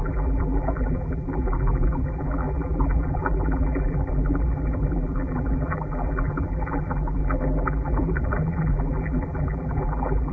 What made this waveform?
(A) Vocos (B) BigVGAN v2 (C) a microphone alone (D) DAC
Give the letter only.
B